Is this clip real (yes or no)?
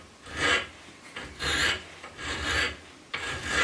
yes